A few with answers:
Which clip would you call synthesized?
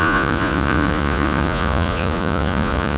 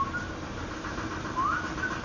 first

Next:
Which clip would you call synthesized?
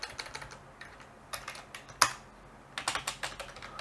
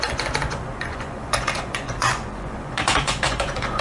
second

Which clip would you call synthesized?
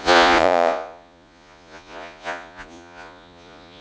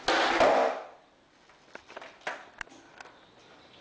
first